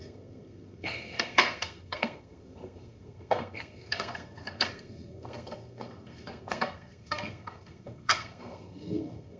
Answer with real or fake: fake